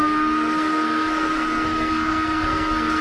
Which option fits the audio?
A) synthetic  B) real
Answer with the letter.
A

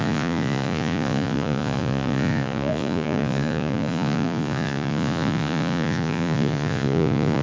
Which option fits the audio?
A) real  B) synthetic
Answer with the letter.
B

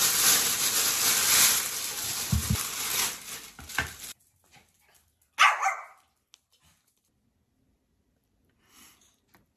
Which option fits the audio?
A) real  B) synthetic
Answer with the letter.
A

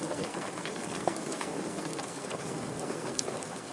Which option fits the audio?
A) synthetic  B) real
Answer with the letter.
A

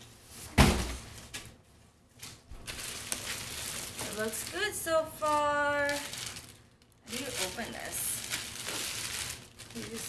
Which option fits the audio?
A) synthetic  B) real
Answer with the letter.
B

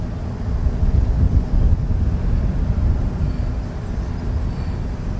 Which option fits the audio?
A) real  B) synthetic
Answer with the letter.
A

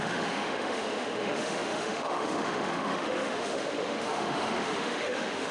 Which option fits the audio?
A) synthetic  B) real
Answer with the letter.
A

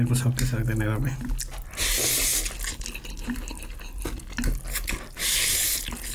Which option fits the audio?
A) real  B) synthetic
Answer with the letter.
A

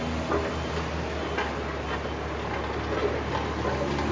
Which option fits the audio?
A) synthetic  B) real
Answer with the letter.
B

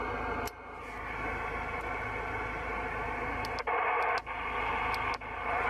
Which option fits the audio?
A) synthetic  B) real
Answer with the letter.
B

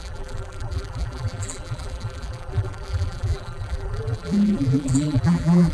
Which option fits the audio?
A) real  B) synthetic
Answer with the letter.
B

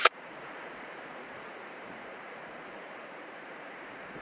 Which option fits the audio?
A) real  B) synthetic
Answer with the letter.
B